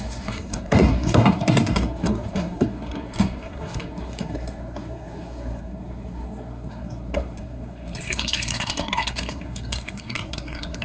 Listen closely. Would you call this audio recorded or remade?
remade